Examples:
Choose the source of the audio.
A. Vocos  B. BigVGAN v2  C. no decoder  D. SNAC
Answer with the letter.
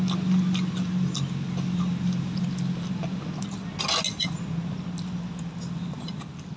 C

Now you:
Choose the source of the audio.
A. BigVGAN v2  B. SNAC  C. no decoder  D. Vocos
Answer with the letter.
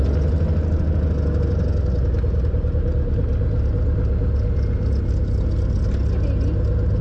C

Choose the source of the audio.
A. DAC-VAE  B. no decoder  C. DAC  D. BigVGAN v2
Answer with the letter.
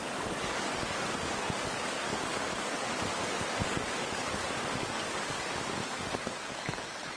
C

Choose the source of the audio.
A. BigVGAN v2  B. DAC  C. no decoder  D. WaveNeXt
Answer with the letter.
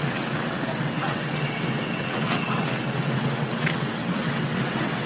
D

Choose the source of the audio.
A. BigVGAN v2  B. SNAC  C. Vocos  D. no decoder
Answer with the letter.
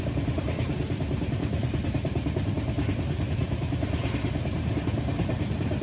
A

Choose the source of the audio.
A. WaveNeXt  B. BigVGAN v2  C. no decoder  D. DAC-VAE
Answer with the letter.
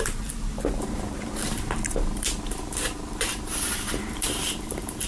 B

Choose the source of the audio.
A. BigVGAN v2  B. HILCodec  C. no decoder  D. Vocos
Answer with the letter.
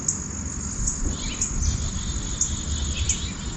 C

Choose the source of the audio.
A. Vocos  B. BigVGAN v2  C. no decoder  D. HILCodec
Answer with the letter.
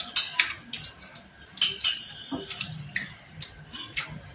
C